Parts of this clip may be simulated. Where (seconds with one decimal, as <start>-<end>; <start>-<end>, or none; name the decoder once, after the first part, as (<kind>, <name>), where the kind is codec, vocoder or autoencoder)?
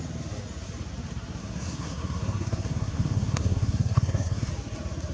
1.4-4.5 (codec, SNAC)